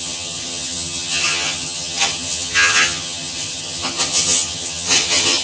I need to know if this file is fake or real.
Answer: fake